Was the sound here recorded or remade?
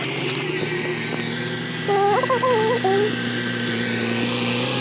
recorded